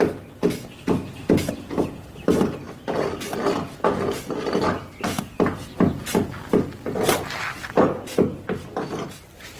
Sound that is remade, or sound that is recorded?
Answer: recorded